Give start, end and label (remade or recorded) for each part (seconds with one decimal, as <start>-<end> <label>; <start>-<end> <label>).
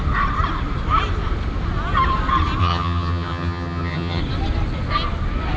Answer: 0.0-2.6 recorded; 2.6-4.2 remade; 4.2-5.6 recorded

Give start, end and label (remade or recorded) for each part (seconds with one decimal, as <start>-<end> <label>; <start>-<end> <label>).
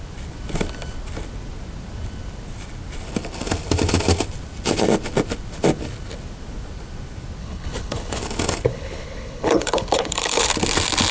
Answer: 0.0-7.4 recorded; 7.4-8.2 remade; 8.2-8.7 recorded; 8.7-10.5 remade; 10.5-11.1 recorded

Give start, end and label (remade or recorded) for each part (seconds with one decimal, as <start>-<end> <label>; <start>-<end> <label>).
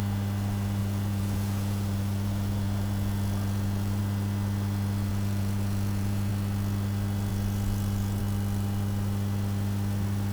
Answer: 0.0-0.8 recorded; 0.8-4.0 remade; 4.0-5.1 recorded; 5.1-6.3 remade; 6.3-7.3 recorded; 7.3-8.2 remade; 8.2-10.3 recorded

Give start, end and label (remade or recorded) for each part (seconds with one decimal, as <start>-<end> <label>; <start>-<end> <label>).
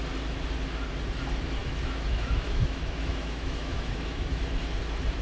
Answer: 0.0-1.6 recorded; 1.6-4.4 remade; 4.4-5.2 recorded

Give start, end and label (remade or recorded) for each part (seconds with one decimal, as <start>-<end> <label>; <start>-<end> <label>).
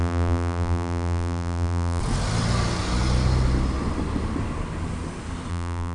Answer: 0.0-2.0 remade; 2.0-5.5 recorded; 5.5-5.9 remade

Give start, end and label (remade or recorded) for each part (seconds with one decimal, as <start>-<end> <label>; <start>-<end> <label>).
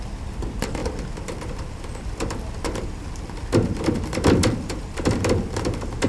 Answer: 0.0-6.1 recorded